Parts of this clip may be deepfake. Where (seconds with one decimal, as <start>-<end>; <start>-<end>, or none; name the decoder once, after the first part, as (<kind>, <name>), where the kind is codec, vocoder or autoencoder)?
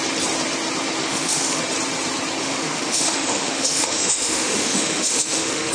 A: 1.0-1.6 (autoencoder, DAC-VAE); 2.4-5.7